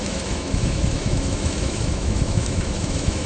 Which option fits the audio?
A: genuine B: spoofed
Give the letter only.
B